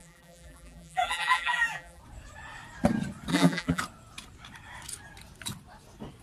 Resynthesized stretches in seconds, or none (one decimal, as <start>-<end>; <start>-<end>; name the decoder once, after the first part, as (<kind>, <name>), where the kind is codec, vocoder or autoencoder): 0.0-2.0 (vocoder, BigVGAN v2); 3.3-3.8